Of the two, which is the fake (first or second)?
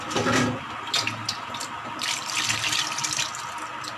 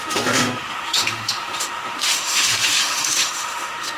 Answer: second